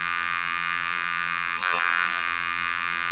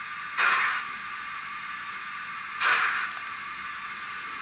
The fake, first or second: first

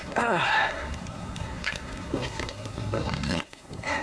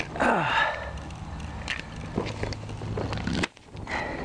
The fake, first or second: first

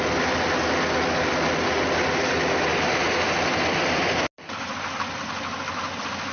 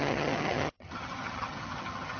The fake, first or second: second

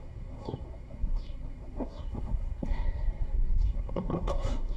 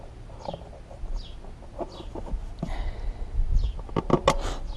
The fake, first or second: first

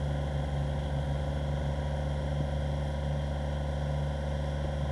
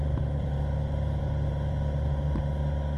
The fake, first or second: second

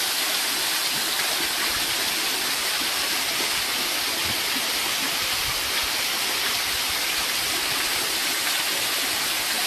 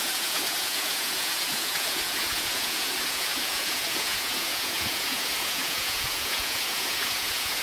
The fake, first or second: second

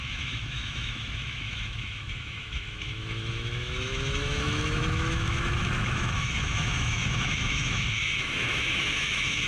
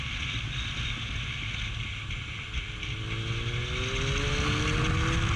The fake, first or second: first